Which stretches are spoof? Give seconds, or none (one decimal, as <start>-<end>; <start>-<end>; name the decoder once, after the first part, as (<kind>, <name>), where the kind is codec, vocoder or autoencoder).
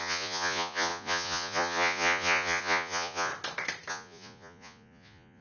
0.0-3.3 (vocoder, Vocos); 3.9-5.4